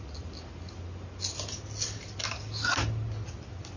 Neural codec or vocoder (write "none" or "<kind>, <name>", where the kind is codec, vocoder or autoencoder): none